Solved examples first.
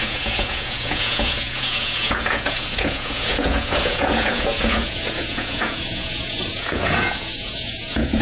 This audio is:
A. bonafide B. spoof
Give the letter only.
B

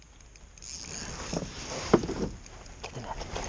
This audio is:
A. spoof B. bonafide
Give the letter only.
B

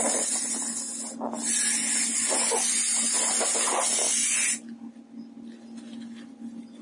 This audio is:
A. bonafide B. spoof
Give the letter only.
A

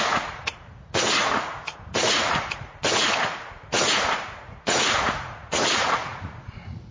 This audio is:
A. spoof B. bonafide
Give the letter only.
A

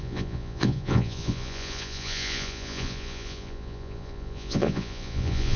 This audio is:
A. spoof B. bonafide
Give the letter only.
A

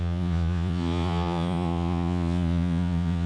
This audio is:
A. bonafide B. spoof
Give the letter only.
B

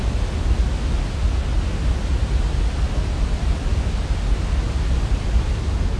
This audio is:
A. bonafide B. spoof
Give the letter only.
A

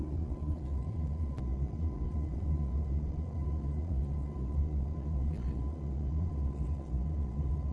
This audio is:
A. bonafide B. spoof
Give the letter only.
B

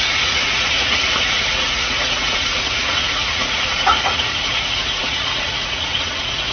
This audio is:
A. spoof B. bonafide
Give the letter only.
A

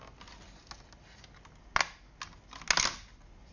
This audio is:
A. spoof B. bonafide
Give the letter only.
B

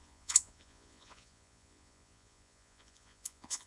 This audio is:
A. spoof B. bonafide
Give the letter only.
A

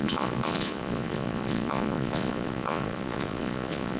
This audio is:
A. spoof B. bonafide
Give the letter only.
A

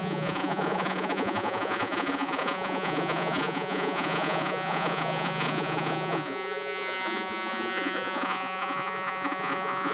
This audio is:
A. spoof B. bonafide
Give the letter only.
A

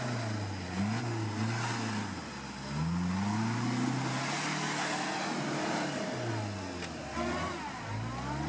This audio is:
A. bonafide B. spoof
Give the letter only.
A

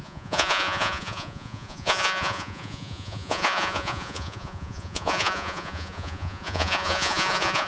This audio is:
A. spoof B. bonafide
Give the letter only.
A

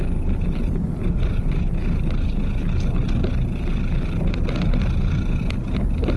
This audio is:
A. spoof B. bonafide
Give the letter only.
B